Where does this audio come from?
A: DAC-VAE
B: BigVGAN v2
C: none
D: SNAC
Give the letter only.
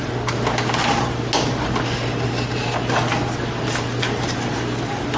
C